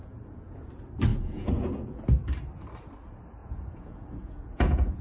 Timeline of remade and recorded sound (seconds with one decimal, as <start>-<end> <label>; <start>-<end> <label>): 0.0-0.7 remade; 0.7-1.1 recorded; 1.1-2.0 remade; 2.0-3.4 recorded; 3.4-5.0 remade